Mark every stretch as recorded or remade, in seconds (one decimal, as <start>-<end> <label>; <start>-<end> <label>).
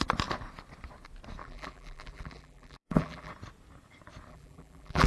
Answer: 0.0-1.4 recorded; 1.4-3.3 remade; 3.3-4.3 recorded; 4.3-5.1 remade